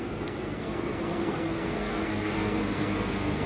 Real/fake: fake